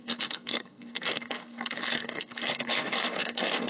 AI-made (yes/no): yes